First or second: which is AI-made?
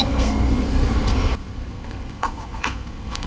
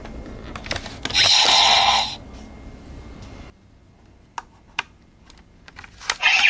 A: first